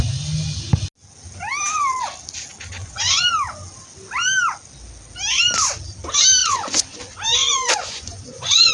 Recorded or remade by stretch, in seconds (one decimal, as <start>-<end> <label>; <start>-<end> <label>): 0.0-2.8 recorded; 2.8-3.3 remade; 3.3-6.4 recorded; 6.4-7.0 remade; 7.0-7.4 recorded; 7.4-8.7 remade